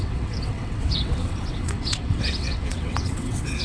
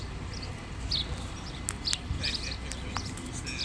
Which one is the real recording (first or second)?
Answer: second